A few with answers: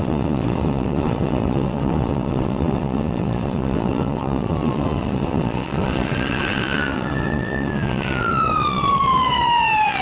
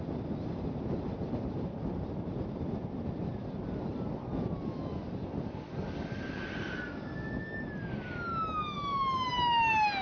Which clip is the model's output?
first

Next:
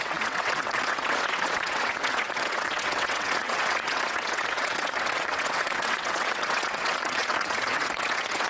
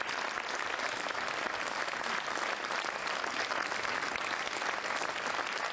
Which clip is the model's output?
first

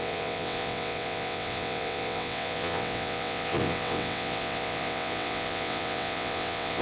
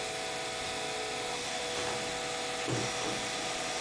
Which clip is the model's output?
first